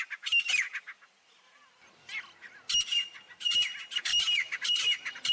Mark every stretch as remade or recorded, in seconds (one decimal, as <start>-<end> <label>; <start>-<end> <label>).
0.0-4.1 recorded; 4.1-5.3 remade